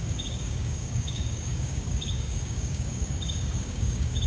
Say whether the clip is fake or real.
fake